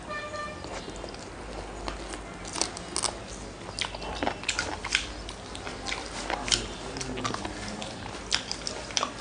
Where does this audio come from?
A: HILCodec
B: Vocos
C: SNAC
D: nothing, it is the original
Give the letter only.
D